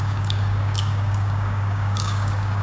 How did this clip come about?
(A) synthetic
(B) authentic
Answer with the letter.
A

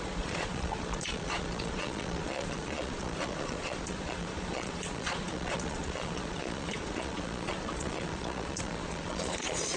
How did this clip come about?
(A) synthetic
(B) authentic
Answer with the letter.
A